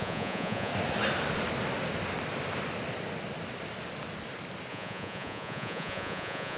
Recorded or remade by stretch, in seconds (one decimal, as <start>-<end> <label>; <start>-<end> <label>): 0.0-0.7 remade; 0.7-4.7 recorded; 4.7-6.6 remade